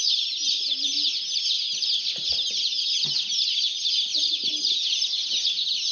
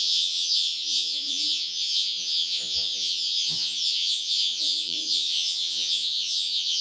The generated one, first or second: second